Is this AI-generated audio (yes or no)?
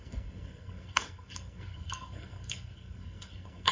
yes